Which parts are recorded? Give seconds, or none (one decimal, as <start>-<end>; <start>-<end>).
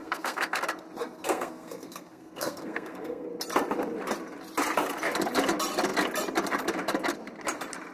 0.6-1.0; 3.3-7.9